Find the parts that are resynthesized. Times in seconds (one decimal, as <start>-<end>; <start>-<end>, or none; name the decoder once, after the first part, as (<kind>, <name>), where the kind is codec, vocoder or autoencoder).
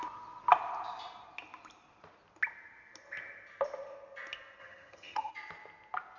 4.6-5.3 (vocoder, HiFi-GAN)